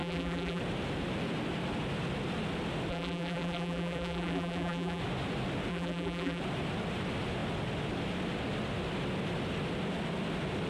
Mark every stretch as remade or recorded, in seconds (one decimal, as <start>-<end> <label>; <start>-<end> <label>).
0.0-0.6 remade; 0.6-2.9 recorded; 2.9-5.0 remade; 5.0-5.7 recorded; 5.7-6.4 remade; 6.4-10.7 recorded